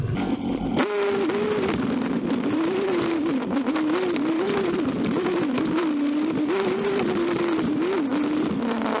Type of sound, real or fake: real